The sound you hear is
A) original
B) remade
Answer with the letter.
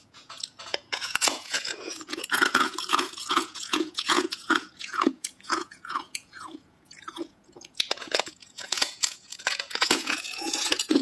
B